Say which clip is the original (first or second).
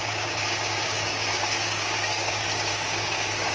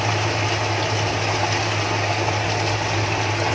second